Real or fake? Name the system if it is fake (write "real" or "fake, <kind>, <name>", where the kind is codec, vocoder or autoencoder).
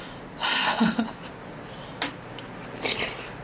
real